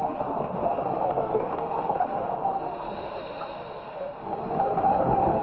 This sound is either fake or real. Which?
fake